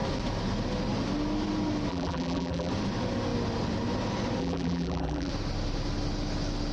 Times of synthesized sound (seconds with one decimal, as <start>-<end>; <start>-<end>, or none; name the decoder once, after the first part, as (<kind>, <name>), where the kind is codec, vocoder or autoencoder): 1.9-2.7 (vocoder, BigVGAN v2); 4.4-5.3